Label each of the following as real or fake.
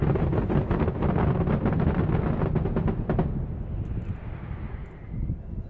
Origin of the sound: real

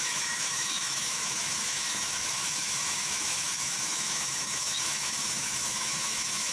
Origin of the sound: fake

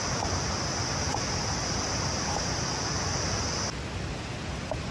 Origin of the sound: real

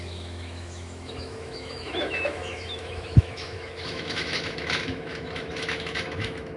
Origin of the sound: fake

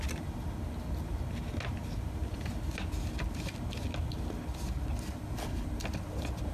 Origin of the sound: real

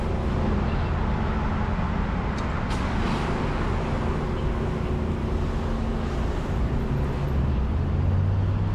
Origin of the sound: real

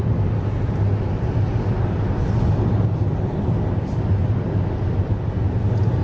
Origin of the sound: real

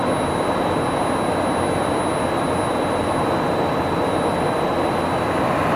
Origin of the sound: real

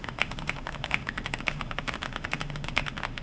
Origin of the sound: fake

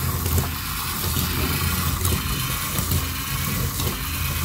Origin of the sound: real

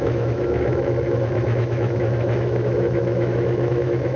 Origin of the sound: fake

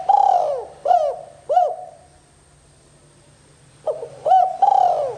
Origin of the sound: real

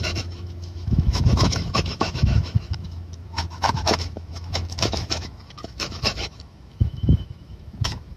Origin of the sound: fake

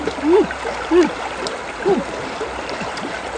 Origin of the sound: real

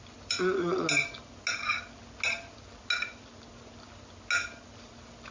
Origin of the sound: real